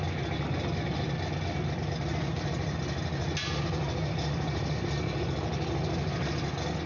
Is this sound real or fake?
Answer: real